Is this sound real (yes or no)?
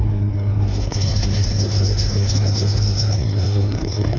no